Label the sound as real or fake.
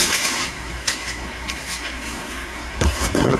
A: fake